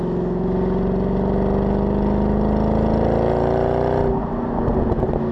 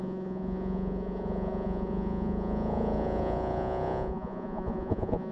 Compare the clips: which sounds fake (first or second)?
second